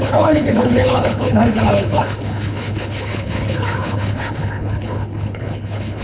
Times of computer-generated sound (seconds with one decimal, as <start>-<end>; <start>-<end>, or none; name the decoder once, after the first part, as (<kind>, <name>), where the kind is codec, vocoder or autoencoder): 0.0-6.0 (codec, HILCodec)